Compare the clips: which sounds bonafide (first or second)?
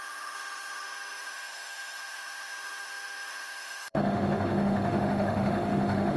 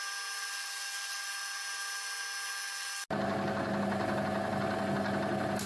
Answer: second